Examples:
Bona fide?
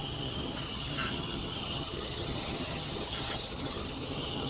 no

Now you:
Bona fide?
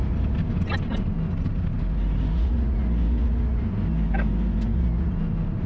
yes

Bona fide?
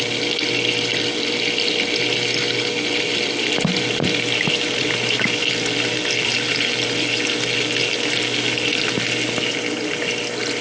yes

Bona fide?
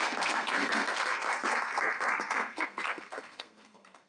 no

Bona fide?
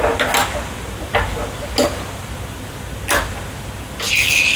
yes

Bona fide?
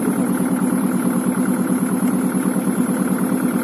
yes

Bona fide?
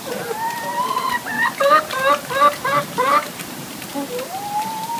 yes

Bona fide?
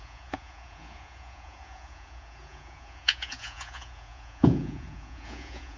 no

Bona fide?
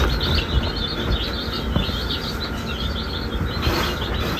yes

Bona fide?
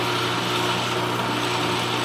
yes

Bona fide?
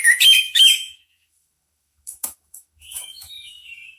no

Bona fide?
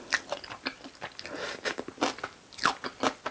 yes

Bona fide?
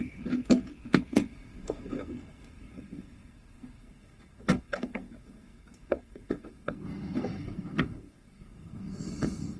no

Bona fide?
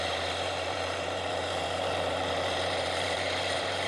no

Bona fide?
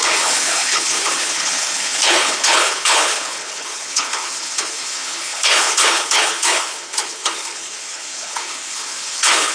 no